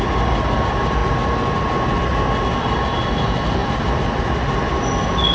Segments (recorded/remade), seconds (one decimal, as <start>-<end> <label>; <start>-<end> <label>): 0.0-5.3 recorded